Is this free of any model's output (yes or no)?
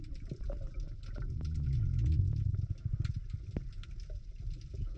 yes